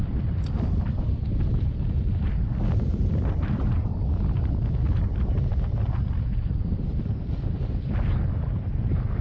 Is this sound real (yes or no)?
yes